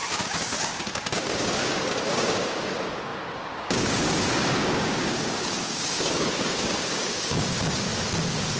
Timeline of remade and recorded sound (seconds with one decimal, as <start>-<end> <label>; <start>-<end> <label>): 0.0-7.9 remade; 7.9-8.6 recorded